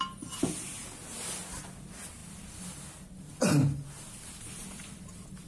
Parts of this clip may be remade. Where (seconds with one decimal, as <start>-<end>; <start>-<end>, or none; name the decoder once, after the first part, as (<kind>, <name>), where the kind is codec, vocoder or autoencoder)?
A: none